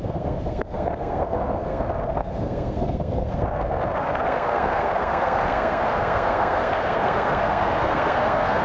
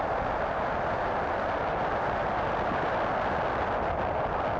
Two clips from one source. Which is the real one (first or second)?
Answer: second